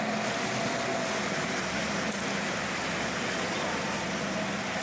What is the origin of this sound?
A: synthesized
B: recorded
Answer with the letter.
B